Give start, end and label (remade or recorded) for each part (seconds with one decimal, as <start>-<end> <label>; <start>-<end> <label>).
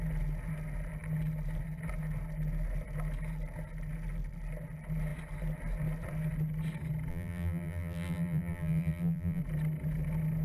0.0-7.1 recorded; 7.1-9.4 remade; 9.4-10.4 recorded